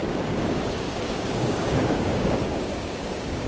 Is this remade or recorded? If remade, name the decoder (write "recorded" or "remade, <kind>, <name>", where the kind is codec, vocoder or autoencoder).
remade, codec, DAC